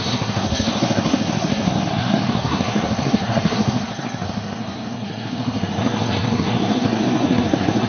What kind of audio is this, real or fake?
fake